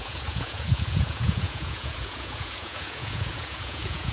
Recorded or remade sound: remade